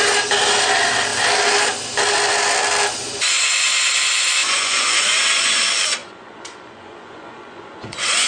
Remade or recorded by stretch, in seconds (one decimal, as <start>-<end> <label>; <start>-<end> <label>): 0.0-4.4 recorded; 4.4-5.6 remade; 5.6-6.0 recorded; 6.0-8.3 remade